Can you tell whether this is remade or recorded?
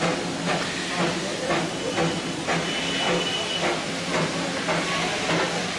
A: recorded